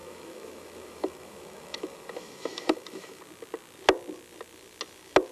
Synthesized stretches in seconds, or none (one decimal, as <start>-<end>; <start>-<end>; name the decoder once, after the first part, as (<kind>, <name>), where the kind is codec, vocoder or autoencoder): 0.0-3.2 (autoencoder, DAC-VAE)